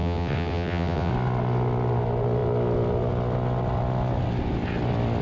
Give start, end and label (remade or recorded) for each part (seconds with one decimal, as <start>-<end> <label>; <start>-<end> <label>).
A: 0.0-1.1 remade; 1.1-5.2 recorded

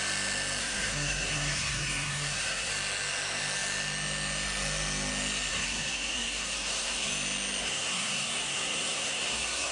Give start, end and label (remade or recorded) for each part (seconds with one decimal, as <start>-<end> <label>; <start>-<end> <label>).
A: 0.0-0.6 recorded; 0.6-2.7 remade; 2.7-5.5 recorded; 5.5-7.1 remade; 7.1-7.6 recorded; 7.6-9.7 remade

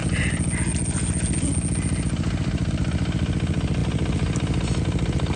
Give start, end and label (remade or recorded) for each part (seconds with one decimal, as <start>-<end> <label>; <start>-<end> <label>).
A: 0.0-5.4 recorded

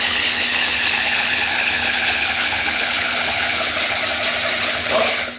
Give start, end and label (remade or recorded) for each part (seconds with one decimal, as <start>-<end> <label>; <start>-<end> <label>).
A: 0.0-4.0 remade; 4.0-4.6 recorded; 4.6-5.4 remade

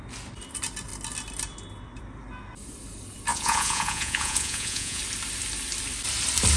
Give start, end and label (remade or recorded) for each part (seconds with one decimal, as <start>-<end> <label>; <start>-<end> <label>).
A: 0.0-3.3 recorded; 3.3-5.0 remade; 5.0-6.6 recorded

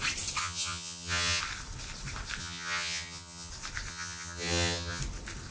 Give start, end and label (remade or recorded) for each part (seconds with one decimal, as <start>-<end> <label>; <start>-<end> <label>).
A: 0.0-0.4 recorded; 0.4-1.4 remade; 1.4-2.4 recorded; 2.4-3.5 remade; 3.5-3.9 recorded; 3.9-5.0 remade; 5.0-5.5 recorded

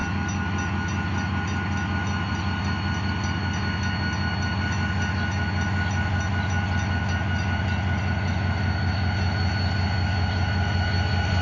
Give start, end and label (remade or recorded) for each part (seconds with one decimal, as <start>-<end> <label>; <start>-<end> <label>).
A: 0.0-11.4 recorded